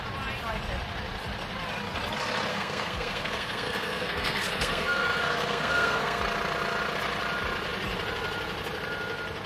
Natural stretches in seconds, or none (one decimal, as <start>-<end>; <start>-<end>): 0.0-2.5; 6.2-9.5